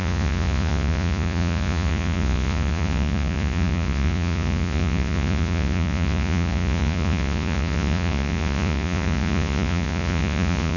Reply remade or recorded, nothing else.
remade